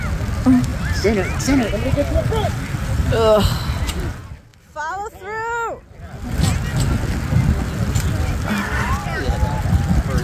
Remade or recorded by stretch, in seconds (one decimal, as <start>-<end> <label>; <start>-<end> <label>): 0.0-10.2 recorded